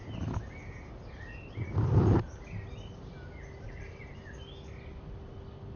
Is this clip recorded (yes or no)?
yes